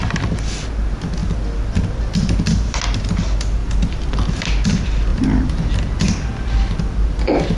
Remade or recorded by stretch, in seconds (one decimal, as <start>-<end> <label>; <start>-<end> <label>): 0.0-3.6 recorded; 3.6-4.3 remade; 4.3-5.1 recorded; 5.1-5.7 remade; 5.7-7.6 recorded